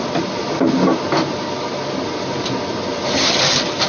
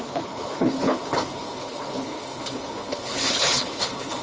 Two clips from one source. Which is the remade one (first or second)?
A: second